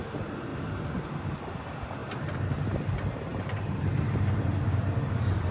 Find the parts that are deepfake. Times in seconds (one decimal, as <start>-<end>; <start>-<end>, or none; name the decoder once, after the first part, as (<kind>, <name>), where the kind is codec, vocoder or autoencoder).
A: 0.5-1.6 (vocoder, BigVGAN v2); 2.0-2.7; 3.3-4.5